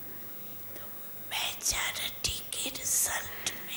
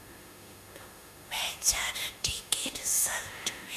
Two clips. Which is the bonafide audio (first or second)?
first